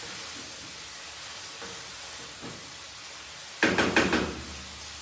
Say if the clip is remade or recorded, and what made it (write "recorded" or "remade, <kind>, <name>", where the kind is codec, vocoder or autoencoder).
recorded